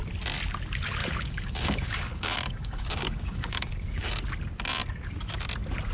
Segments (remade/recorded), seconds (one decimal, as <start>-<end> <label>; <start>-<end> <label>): 0.0-1.0 recorded; 1.0-4.1 remade; 4.1-5.9 recorded